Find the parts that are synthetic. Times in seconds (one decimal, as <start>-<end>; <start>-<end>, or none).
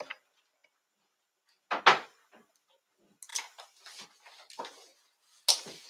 3.3-4.1